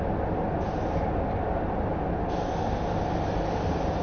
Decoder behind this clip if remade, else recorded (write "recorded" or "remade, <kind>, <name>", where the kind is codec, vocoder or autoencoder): recorded